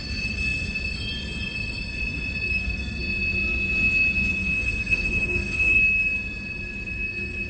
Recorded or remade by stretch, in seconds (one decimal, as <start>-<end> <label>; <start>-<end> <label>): 0.0-2.5 recorded; 2.5-3.0 remade; 3.0-4.4 recorded; 4.4-5.8 remade; 5.8-7.5 recorded